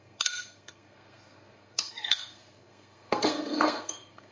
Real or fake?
fake